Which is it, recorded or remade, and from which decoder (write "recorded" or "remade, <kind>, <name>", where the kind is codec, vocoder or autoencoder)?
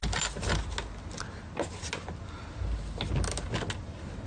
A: recorded